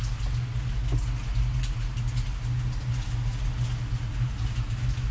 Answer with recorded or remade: recorded